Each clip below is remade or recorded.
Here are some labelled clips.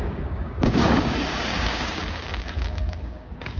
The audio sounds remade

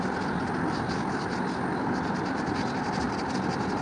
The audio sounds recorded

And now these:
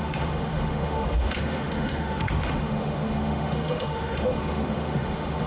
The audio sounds remade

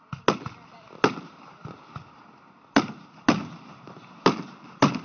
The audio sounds recorded